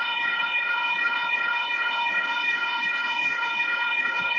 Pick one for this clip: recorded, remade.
remade